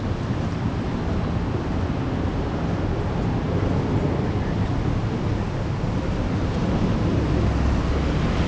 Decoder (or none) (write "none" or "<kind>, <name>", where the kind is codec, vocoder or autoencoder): none